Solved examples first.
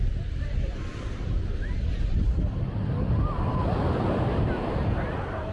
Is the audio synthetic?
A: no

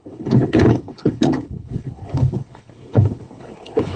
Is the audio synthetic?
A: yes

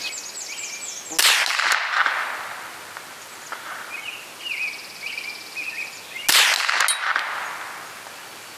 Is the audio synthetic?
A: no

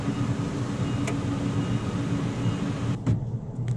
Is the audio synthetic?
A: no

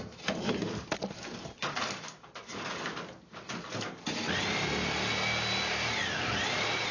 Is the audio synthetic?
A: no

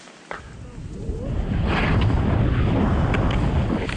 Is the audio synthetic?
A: no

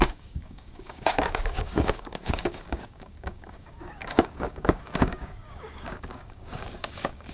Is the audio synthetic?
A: yes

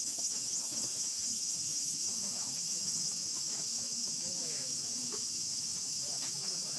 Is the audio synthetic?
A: yes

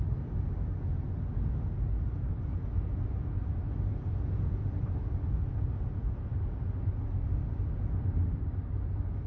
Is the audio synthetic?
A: no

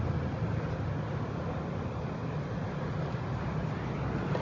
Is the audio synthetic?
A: no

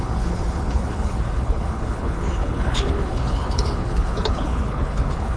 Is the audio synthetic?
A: yes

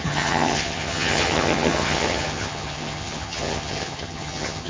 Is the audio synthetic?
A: yes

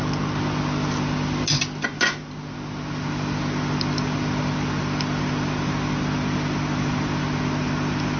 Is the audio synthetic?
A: no